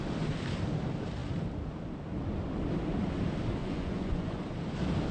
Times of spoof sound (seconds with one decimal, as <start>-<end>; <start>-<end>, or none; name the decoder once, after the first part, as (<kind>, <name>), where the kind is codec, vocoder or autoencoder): 3.6-4.4 (vocoder, Vocos)